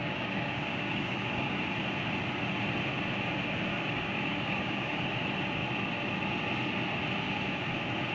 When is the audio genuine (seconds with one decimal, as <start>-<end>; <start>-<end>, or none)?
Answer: 1.6-3.7; 5.0-8.1